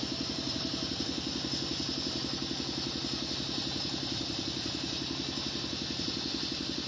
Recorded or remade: recorded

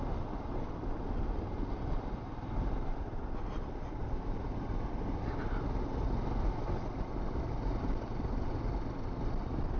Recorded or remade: recorded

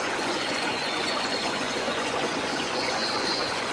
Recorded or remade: remade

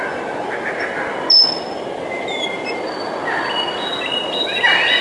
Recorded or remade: recorded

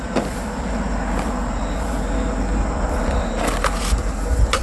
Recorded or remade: recorded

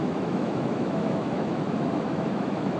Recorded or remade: remade